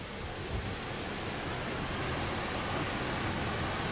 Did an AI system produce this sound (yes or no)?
no